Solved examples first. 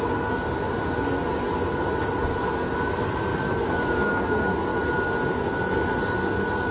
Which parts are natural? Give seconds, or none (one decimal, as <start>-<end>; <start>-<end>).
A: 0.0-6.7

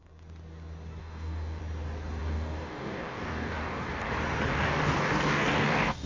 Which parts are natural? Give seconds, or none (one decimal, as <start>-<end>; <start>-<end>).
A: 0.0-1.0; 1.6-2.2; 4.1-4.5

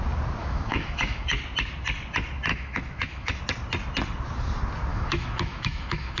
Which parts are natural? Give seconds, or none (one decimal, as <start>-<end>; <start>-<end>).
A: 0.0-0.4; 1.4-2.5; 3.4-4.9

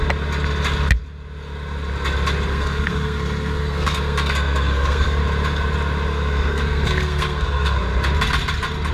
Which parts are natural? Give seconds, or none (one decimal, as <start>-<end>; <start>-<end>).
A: 0.0-2.5; 5.2-6.1; 7.8-8.9

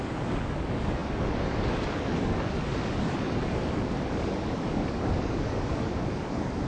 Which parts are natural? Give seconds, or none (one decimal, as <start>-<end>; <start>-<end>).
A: none